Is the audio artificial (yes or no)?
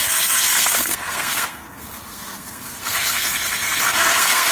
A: yes